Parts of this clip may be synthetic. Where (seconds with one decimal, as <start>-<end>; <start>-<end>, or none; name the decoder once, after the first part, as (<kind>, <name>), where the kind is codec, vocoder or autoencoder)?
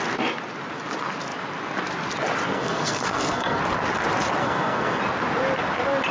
2.5-3.6 (codec, SNAC); 4.4-5.0